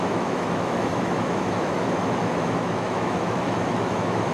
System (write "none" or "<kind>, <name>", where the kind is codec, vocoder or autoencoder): autoencoder, DAC-VAE